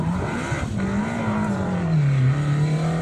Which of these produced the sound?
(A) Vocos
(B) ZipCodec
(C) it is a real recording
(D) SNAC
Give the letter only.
C